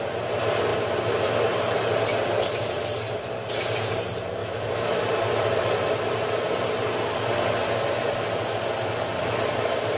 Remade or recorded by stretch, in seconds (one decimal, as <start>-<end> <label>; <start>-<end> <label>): 0.0-4.4 recorded; 4.4-5.0 remade; 5.0-10.0 recorded